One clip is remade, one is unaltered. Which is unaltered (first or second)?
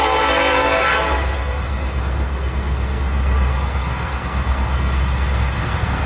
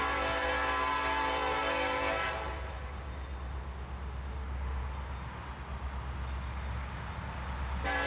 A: second